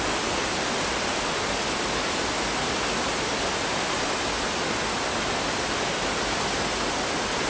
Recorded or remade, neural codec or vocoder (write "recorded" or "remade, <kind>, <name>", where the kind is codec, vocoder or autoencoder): recorded